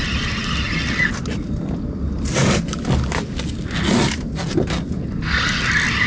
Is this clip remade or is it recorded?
recorded